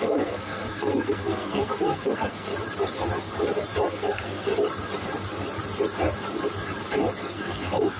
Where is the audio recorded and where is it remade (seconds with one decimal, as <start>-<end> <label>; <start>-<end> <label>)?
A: 0.0-2.5 remade; 2.5-3.9 recorded; 3.9-4.5 remade; 4.5-7.2 recorded; 7.2-8.0 remade